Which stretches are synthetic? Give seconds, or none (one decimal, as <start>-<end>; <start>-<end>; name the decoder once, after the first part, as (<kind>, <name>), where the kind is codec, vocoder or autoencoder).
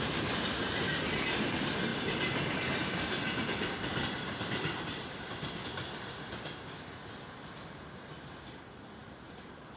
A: 1.9-7.1 (vocoder, BigVGAN v2); 9.0-9.8